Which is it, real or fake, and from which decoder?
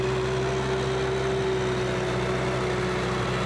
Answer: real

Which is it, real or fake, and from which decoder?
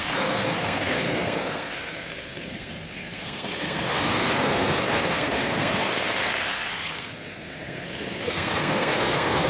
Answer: fake, codec, SNAC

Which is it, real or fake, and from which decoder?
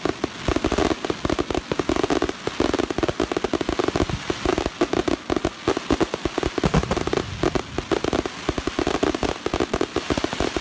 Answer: real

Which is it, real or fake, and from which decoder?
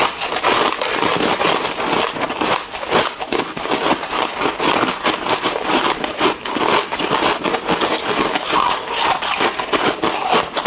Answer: real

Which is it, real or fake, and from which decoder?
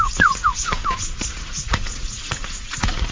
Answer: fake, vocoder, Vocos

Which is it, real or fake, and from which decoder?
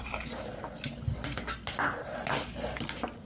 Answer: real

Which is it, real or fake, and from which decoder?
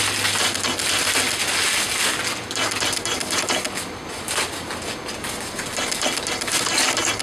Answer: real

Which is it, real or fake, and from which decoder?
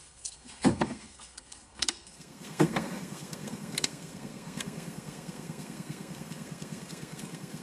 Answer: fake, codec, SNAC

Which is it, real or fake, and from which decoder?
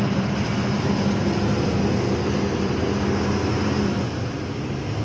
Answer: real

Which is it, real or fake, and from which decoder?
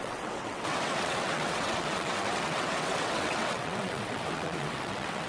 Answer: fake, vocoder, WaveNeXt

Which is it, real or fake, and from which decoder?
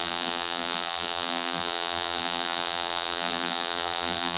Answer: fake, vocoder, BigVGAN v2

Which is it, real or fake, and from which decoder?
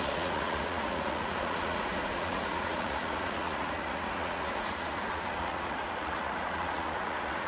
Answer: fake, vocoder, Vocos